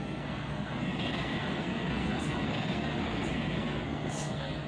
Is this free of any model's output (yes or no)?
no